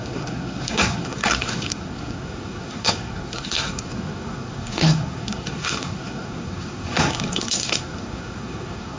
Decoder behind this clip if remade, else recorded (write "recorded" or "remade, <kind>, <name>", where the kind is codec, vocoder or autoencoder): remade, codec, SNAC